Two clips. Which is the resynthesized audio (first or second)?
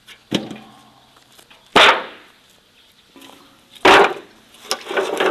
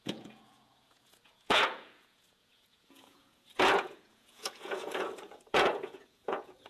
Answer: second